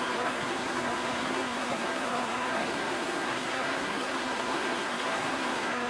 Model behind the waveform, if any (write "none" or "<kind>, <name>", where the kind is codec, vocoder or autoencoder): codec, SNAC